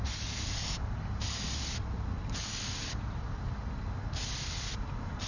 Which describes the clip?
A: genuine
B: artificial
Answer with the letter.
A